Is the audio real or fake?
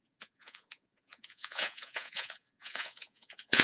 fake